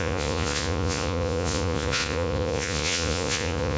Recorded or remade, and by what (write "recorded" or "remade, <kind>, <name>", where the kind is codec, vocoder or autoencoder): remade, vocoder, Vocos